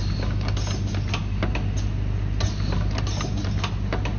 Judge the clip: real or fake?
real